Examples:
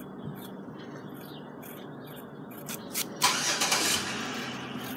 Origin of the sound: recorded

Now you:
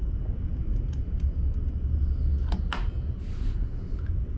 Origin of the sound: recorded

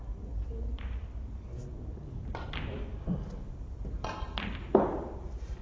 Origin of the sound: recorded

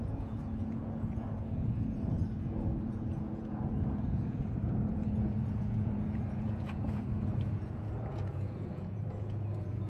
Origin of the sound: remade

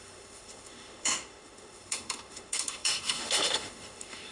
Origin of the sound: remade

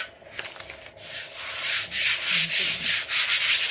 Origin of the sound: recorded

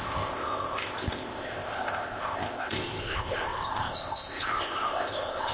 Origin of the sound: remade